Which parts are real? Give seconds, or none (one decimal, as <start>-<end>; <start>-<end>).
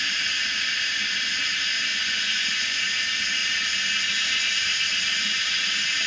0.0-1.9; 2.8-6.1